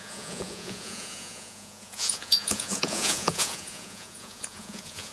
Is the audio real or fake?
fake